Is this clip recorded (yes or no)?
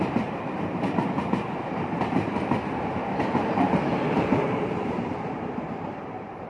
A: no